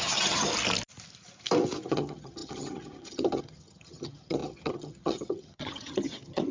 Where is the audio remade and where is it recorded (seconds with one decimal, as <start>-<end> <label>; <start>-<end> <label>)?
0.0-0.5 remade; 0.5-1.9 recorded; 1.9-6.5 remade